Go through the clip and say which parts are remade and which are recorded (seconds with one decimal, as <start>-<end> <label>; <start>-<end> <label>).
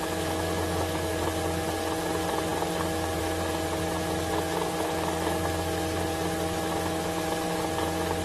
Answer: 0.0-8.2 recorded